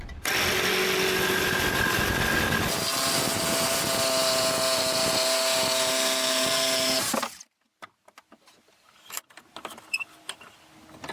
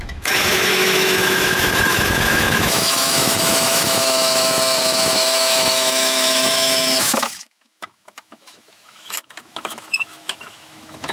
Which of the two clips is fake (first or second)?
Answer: second